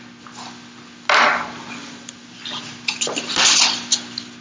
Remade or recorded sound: recorded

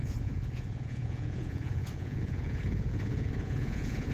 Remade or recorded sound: remade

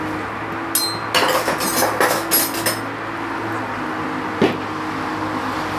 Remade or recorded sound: recorded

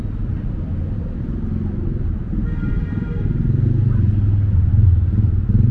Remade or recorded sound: recorded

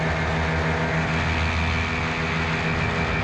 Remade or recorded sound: recorded